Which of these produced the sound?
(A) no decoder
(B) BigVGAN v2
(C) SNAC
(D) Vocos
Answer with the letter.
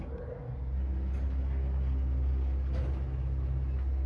A